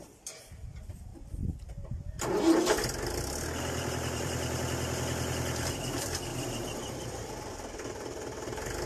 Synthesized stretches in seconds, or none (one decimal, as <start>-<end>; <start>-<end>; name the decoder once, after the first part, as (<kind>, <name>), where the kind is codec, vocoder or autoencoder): 0.0-1.1 (vocoder, BigVGAN v2); 3.6-8.9